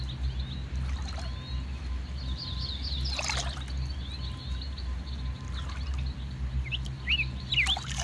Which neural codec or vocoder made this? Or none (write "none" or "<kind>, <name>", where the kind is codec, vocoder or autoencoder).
none